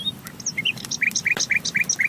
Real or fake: real